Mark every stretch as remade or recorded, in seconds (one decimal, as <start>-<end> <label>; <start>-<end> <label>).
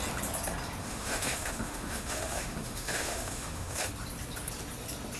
0.0-0.8 recorded; 0.8-3.9 remade; 3.9-5.2 recorded